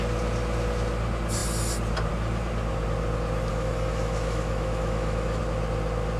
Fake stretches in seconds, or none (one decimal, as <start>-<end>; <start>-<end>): 3.5-5.4

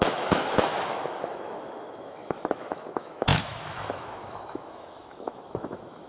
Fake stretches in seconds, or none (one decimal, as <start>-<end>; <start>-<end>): 0.0-6.1